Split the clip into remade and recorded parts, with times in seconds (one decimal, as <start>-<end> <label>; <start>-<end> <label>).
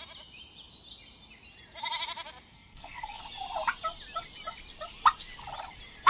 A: 0.0-2.5 recorded; 2.5-3.2 remade; 3.2-6.1 recorded